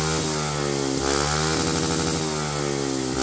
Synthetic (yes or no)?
no